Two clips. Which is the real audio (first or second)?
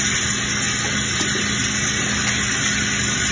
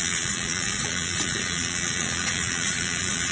first